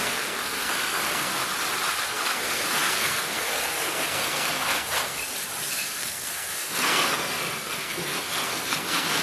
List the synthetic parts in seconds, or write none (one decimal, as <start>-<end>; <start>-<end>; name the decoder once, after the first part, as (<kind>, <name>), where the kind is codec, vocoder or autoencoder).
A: 0.0-1.4 (codec, SNAC); 2.0-5.2; 5.7-9.2